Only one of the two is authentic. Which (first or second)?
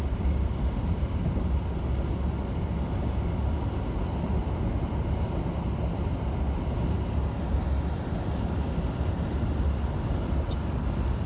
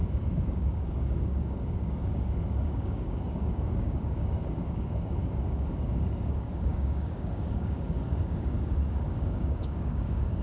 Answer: first